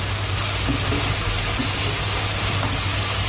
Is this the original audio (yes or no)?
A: yes